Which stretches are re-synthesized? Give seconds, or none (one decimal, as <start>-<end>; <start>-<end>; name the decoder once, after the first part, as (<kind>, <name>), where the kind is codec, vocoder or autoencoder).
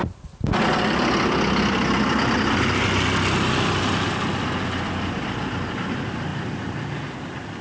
none